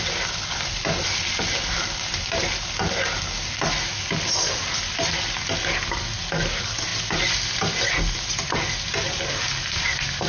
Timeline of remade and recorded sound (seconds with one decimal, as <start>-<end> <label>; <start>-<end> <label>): 0.0-10.3 recorded